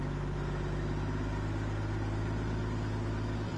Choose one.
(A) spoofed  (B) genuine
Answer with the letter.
B